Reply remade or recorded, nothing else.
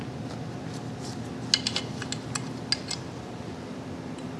recorded